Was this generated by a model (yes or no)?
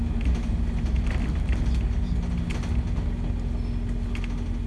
no